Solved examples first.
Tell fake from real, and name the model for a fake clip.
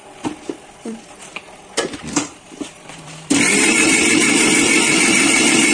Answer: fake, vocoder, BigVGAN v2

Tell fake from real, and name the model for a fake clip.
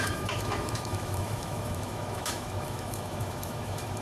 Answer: fake, autoencoder, DAC-VAE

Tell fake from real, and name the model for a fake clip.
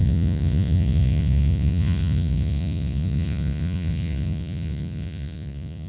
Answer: fake, vocoder, Vocos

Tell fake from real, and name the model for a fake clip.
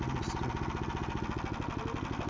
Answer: real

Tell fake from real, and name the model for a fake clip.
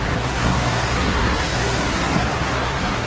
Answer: fake, codec, SNAC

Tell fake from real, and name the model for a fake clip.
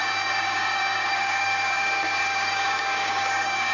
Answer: fake, codec, DAC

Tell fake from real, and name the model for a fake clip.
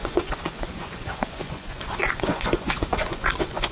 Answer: fake, vocoder, Vocos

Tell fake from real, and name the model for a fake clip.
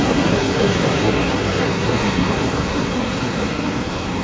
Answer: fake, codec, SNAC